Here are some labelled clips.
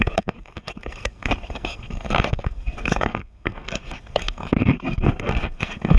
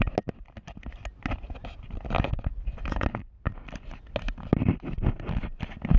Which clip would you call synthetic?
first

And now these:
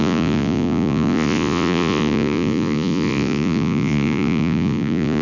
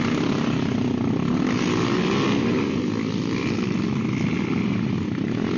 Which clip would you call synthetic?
first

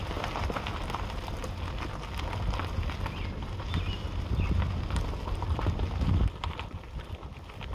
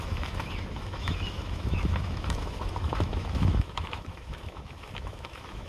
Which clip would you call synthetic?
second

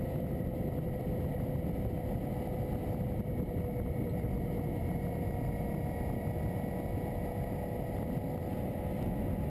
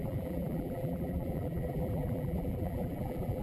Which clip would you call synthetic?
second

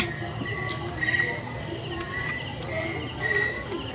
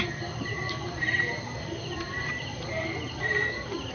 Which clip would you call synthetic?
second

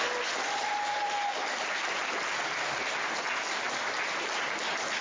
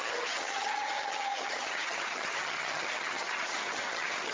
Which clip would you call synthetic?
second